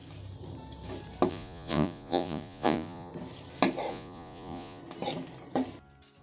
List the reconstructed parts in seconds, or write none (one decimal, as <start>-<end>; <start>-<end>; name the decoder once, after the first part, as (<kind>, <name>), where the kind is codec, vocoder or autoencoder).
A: 1.3-3.1 (vocoder, Vocos); 3.9-4.8